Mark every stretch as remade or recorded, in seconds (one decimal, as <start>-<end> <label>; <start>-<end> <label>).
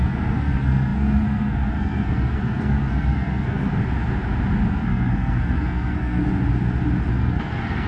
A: 0.0-3.7 remade; 3.7-4.7 recorded; 4.7-6.3 remade; 6.3-7.2 recorded; 7.2-7.9 remade